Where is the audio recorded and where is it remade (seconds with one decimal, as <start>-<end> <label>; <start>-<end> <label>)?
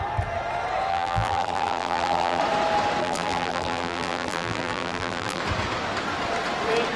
0.0-0.9 recorded; 0.9-2.4 remade; 2.4-3.0 recorded; 3.0-5.4 remade; 5.4-7.0 recorded